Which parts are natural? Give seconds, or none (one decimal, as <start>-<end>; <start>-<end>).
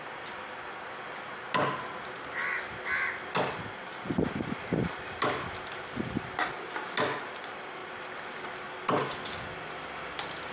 0.0-10.5